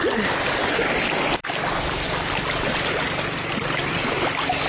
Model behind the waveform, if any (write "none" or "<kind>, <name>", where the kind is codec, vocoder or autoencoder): none